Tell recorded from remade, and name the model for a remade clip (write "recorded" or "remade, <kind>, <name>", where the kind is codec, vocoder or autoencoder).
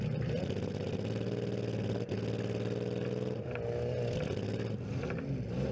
recorded